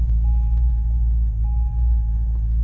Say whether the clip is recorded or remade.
recorded